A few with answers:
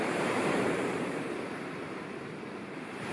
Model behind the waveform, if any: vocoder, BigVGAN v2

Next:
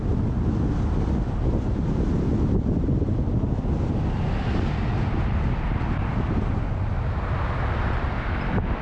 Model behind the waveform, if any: none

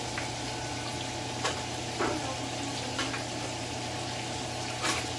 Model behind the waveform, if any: none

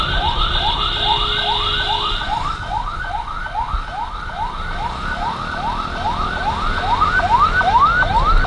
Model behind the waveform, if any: none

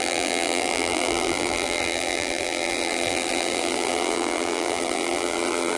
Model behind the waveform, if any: vocoder, BigVGAN v2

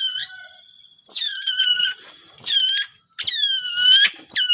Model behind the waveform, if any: none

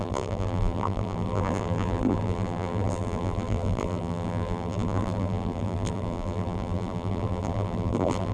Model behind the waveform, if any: vocoder, BigVGAN v2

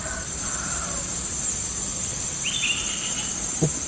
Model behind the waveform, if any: none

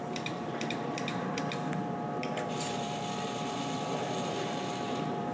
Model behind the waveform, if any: vocoder, BigVGAN v2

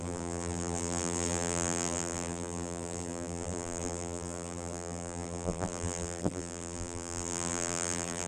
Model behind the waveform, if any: vocoder, BigVGAN v2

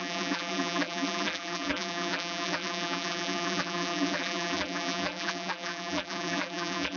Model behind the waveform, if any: vocoder, BigVGAN v2